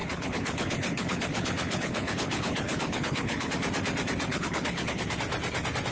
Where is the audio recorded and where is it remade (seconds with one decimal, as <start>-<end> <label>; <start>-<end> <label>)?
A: 0.0-3.5 remade; 3.5-4.3 recorded; 4.3-5.1 remade; 5.1-5.9 recorded